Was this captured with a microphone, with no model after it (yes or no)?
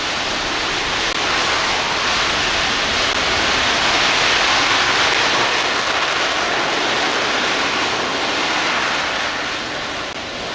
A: yes